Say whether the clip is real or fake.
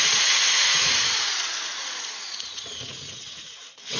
fake